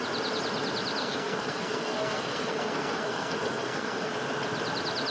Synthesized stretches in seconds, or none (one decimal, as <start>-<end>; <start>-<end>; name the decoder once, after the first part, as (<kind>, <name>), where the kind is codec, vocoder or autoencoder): 1.0-4.1 (codec, SNAC)